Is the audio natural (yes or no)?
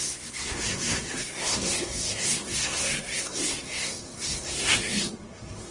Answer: no